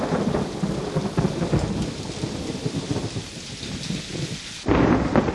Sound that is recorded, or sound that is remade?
recorded